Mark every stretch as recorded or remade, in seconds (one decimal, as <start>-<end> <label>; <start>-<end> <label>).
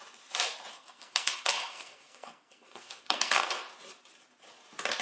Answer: 0.0-0.7 recorded; 0.7-3.7 remade; 3.7-5.0 recorded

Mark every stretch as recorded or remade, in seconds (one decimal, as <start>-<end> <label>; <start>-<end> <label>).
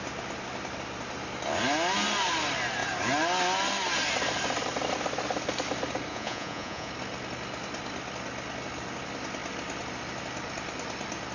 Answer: 0.0-6.1 recorded; 6.1-6.9 remade; 6.9-11.3 recorded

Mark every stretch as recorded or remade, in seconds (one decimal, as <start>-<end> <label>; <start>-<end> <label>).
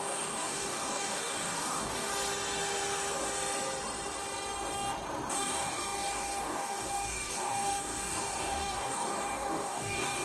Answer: 0.0-2.1 remade; 2.1-5.3 recorded; 5.3-10.2 remade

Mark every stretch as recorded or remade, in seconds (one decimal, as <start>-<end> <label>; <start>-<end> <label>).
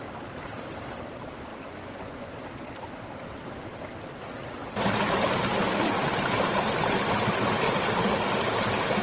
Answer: 0.0-1.5 recorded; 1.5-2.3 remade; 2.3-9.0 recorded